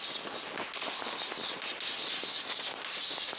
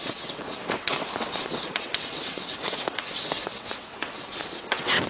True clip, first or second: first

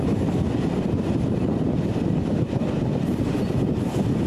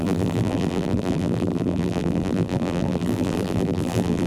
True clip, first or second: first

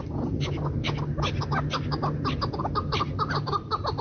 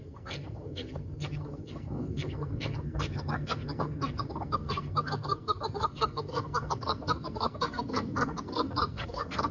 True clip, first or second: first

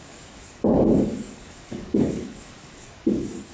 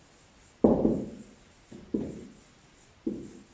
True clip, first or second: second